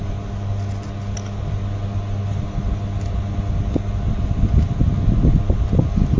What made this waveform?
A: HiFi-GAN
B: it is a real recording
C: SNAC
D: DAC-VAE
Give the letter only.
B